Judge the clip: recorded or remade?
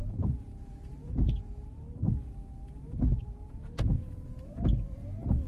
remade